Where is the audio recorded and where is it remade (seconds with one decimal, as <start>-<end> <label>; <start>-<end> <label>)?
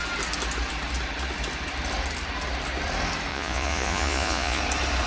0.0-3.3 recorded; 3.3-4.6 remade; 4.6-5.1 recorded